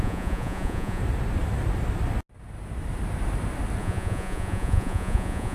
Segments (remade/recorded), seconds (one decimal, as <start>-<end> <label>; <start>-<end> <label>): 0.0-1.0 remade; 1.0-3.8 recorded; 3.8-5.5 remade